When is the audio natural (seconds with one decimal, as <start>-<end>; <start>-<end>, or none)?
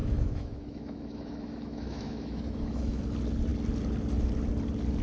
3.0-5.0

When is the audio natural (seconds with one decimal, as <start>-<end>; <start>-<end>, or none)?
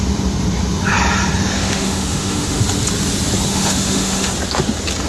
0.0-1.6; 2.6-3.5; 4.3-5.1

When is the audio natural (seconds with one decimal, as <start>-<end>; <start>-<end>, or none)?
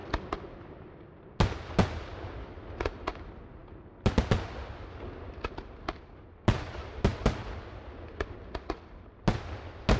0.0-10.0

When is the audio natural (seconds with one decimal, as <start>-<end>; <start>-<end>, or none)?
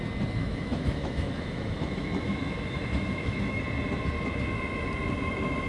0.0-0.4; 3.6-5.7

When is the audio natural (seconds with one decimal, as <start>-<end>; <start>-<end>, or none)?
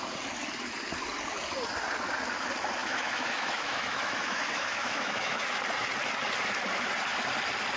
0.0-2.8; 5.6-7.8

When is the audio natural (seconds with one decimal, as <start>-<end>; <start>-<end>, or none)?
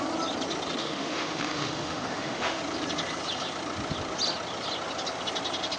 0.0-0.8; 2.6-5.8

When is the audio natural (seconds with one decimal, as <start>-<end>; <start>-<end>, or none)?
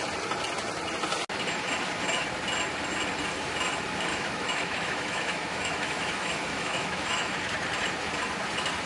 0.0-4.1; 7.3-8.9